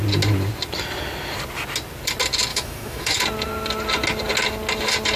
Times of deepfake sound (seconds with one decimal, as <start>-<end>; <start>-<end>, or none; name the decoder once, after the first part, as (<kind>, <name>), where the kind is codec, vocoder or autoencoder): 2.5-3.2 (autoencoder, DAC-VAE)